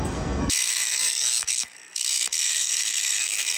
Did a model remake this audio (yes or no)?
yes